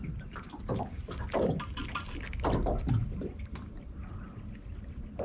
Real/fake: real